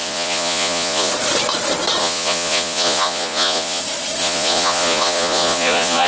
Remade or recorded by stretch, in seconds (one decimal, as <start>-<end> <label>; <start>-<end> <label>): 0.0-1.1 remade; 1.1-2.0 recorded; 2.0-3.8 remade; 3.8-4.2 recorded; 4.2-6.1 remade